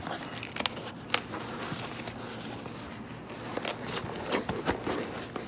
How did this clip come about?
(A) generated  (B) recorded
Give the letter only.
B